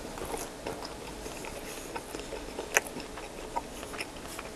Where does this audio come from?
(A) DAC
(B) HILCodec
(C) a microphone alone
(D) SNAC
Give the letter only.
C